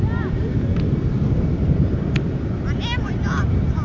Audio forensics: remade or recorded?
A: recorded